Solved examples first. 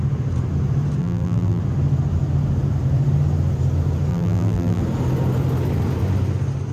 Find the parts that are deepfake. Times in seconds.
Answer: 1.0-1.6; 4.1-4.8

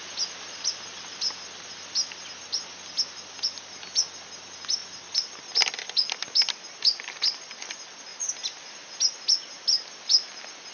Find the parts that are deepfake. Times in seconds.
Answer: none

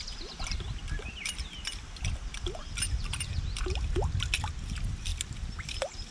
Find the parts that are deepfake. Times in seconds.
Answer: 0.8-4.0

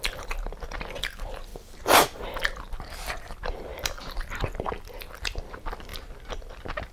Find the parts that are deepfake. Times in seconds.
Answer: 0.0-1.5; 2.8-3.7; 5.0-6.9

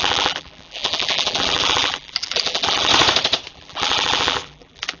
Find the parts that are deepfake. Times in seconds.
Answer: 0.0-2.9; 3.5-5.0

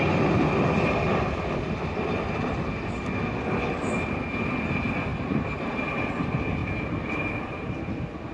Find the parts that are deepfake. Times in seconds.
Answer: 5.1-5.8; 6.6-7.8

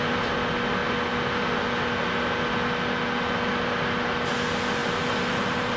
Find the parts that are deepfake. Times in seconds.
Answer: 4.8-5.8

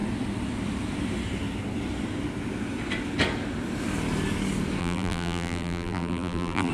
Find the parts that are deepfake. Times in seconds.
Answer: 4.8-6.7